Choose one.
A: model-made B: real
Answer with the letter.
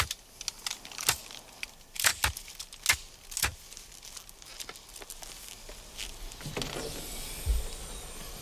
B